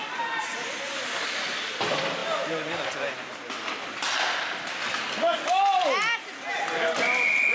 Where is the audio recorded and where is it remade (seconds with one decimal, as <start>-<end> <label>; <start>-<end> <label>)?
0.0-0.7 remade; 0.7-7.5 recorded